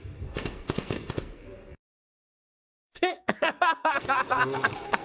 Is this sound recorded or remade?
remade